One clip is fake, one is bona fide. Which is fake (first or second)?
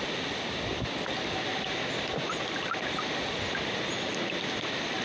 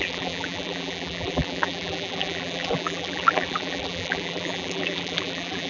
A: second